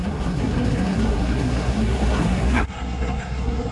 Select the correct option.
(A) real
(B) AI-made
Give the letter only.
B